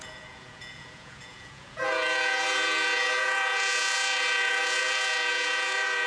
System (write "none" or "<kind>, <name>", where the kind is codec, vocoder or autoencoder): vocoder, Vocos